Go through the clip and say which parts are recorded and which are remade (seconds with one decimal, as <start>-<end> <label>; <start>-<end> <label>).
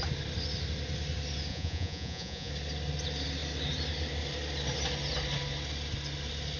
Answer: 0.0-1.5 recorded; 1.5-2.5 remade; 2.5-6.6 recorded